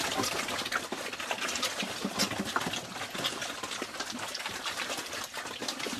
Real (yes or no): yes